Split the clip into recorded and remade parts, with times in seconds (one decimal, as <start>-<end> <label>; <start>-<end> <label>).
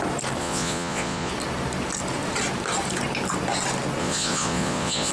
0.0-0.4 recorded; 0.4-1.3 remade; 1.3-4.0 recorded; 4.0-5.1 remade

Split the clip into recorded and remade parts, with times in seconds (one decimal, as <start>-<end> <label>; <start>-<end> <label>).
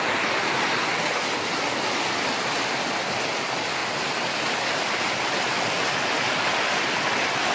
0.0-7.5 recorded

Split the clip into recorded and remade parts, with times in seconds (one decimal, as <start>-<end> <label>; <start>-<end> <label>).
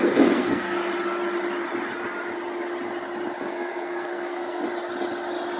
0.0-0.8 remade; 0.8-3.4 recorded; 3.4-4.6 remade; 4.6-5.6 recorded